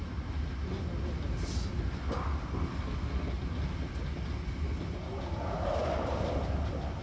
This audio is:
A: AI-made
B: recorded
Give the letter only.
B